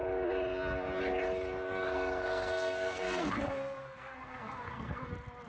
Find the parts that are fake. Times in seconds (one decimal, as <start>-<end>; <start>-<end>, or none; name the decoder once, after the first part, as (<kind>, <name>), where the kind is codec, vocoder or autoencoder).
1.8-5.1 (codec, SNAC)